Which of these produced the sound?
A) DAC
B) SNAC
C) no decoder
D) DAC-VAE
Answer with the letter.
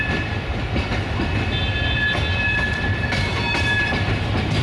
C